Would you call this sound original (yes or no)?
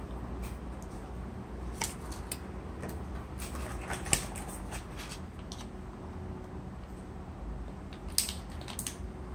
yes